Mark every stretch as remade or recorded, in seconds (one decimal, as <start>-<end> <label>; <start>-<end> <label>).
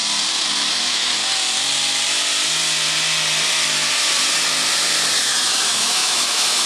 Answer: 0.0-0.7 recorded; 0.7-1.2 remade; 1.2-5.2 recorded; 5.2-6.7 remade